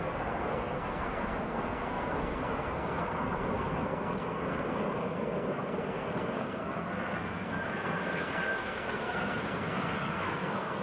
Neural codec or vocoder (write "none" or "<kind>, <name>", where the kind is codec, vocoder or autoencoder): codec, SNAC